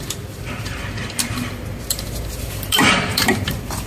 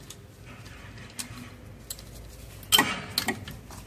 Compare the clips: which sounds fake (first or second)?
first